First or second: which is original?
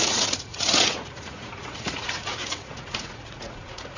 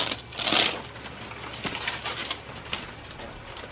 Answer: second